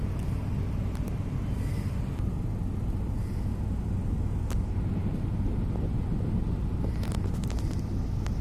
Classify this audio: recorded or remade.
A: recorded